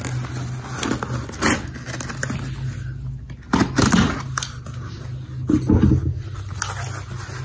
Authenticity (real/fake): real